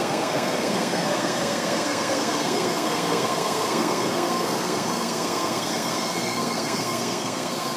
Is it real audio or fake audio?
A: fake